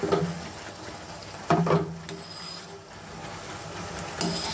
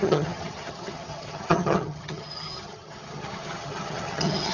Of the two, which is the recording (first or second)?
first